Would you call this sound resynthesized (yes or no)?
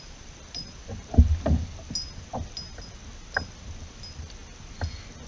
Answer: no